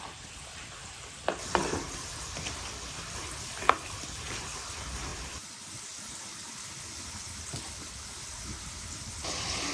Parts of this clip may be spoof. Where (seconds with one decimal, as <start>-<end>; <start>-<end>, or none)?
none